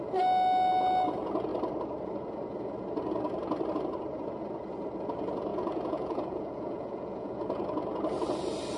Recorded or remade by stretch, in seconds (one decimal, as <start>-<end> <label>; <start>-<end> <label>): 0.0-5.5 recorded; 5.5-7.4 remade; 7.4-8.8 recorded